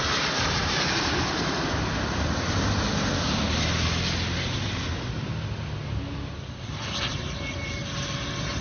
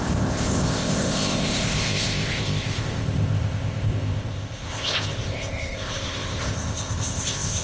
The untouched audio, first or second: first